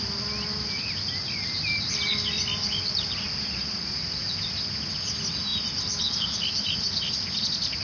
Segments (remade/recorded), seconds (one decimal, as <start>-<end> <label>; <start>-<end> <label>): 0.0-7.8 recorded